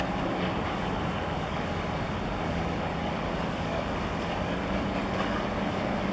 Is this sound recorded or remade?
remade